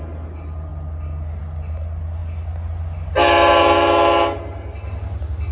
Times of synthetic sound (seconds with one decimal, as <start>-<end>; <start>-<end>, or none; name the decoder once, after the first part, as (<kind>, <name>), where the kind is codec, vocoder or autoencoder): none